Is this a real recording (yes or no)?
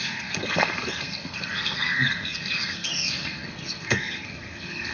no